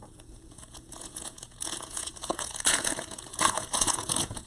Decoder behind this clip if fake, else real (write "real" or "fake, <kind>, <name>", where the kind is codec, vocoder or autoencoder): fake, vocoder, Vocos